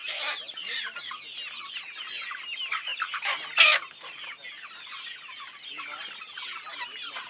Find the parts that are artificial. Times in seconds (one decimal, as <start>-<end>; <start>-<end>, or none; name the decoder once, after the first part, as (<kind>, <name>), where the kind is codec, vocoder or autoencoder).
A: none